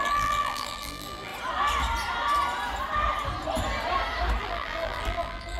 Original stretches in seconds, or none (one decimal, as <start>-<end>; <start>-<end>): 1.3-4.4